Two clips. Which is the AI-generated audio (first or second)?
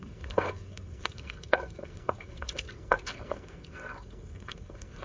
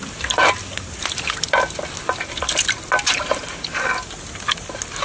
first